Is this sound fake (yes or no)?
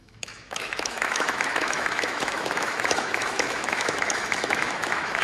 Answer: yes